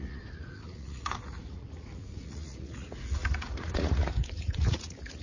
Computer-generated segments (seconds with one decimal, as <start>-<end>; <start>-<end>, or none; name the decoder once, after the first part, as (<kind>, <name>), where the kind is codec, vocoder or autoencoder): 0.0-5.2 (vocoder, Vocos)